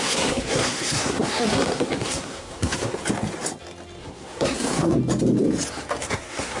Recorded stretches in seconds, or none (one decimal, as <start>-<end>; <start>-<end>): 3.0-4.0; 5.0-6.0